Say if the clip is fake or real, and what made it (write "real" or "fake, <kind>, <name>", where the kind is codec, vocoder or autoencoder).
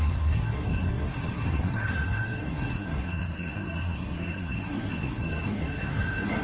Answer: fake, codec, SNAC